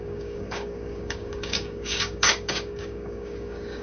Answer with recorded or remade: remade